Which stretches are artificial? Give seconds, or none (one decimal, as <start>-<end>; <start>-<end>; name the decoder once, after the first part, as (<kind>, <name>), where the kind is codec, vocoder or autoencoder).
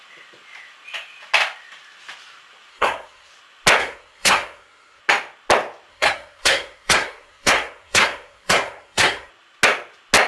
2.7-3.3 (codec, SNAC); 3.8-5.0; 5.9-9.3